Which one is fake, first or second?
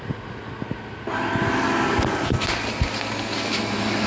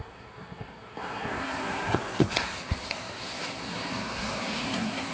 second